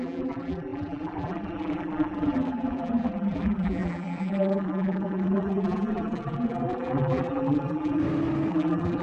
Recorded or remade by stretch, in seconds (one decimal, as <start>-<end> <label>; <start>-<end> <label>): 0.0-8.0 remade; 8.0-8.5 recorded; 8.5-9.0 remade